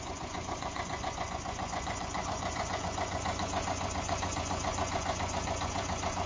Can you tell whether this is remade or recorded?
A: remade